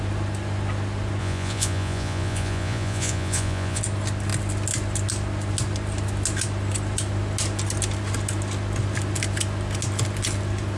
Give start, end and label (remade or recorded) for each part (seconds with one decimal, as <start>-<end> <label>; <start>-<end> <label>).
0.0-1.2 recorded; 1.2-3.8 remade; 3.8-10.8 recorded